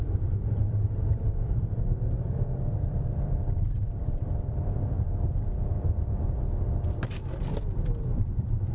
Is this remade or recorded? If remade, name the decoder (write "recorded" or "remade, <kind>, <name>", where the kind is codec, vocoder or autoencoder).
remade, vocoder, BigVGAN v2